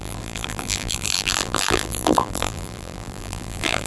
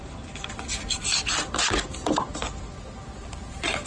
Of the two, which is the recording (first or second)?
second